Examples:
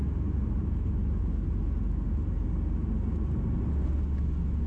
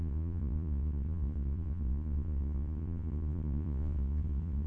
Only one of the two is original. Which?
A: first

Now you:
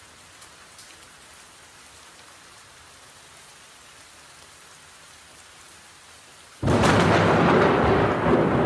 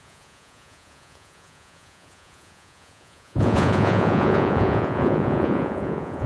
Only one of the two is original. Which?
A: first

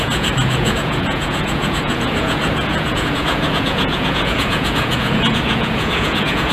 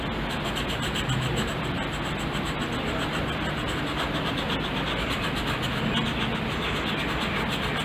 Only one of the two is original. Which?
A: second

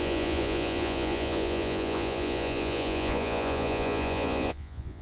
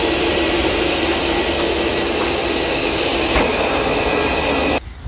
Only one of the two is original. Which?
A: second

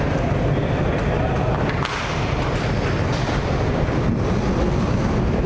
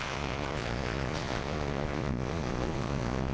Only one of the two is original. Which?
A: first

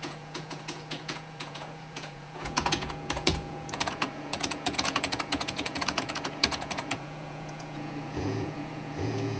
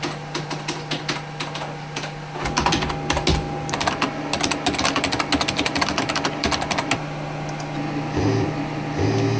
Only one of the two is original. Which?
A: second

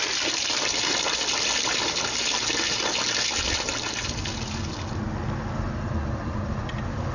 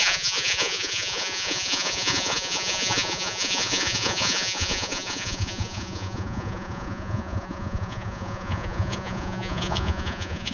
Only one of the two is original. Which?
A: first